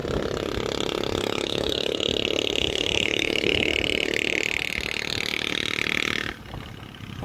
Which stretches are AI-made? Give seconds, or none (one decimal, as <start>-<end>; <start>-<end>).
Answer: 1.2-2.1; 2.6-3.7